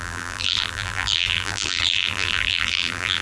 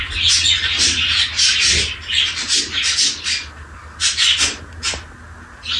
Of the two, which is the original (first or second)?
second